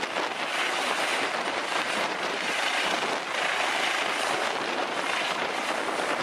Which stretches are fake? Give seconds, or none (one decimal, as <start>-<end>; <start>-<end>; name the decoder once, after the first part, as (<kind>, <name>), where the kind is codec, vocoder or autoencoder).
1.1-2.8 (vocoder, BigVGAN v2); 4.8-5.6